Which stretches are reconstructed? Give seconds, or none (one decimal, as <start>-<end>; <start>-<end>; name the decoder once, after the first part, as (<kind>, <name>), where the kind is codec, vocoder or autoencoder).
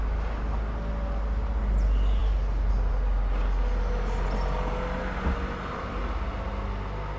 none